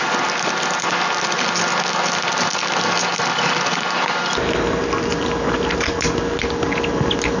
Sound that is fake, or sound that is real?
real